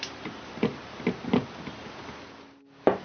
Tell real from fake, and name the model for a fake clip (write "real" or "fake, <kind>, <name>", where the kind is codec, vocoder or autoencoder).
fake, vocoder, BigVGAN v2